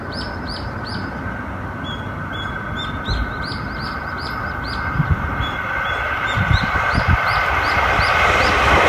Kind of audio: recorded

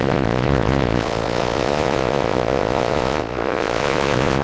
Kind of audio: remade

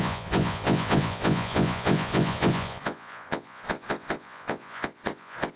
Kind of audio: remade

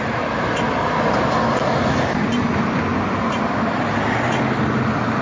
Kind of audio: recorded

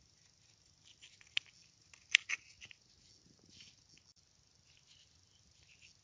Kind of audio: recorded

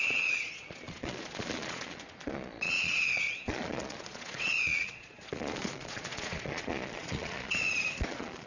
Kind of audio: remade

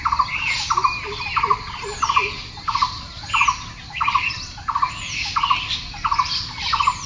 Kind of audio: recorded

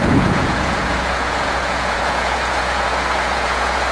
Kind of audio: remade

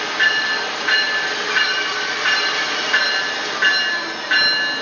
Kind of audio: recorded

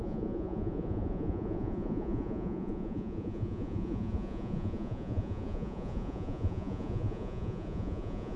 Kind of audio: remade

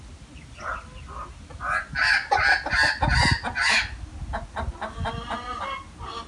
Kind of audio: recorded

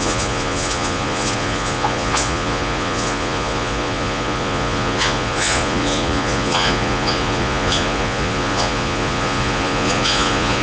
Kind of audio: remade